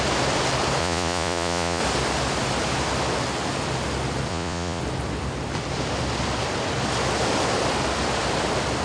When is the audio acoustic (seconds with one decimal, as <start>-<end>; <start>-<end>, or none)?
0.0-0.8; 1.8-4.3; 4.8-8.8